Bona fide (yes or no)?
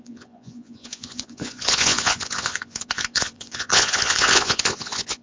no